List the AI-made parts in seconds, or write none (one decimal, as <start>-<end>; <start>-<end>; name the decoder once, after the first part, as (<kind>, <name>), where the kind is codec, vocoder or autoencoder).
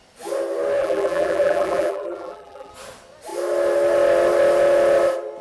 0.8-2.7 (vocoder, BigVGAN v2)